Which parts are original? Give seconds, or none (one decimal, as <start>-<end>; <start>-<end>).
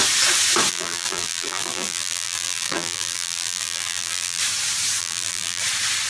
0.0-0.7; 4.4-5.0; 5.6-6.1